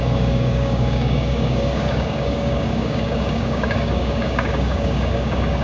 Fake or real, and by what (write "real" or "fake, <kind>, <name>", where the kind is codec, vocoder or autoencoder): fake, codec, DAC